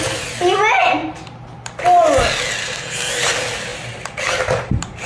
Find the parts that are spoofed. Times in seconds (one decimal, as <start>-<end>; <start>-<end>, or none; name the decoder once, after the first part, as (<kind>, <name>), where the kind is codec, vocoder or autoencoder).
2.6-3.1 (codec, SNAC)